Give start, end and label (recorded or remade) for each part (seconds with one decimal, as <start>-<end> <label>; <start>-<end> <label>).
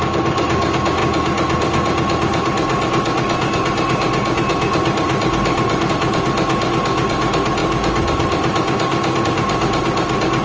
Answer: 0.0-10.4 recorded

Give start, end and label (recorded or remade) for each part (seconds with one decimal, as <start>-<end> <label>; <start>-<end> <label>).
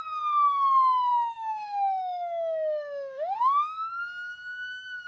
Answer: 0.0-1.1 recorded; 1.1-3.9 remade; 3.9-5.1 recorded